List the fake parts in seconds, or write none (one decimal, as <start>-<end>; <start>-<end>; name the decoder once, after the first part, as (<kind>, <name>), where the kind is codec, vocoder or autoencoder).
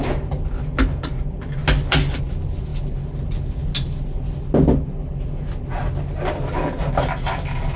none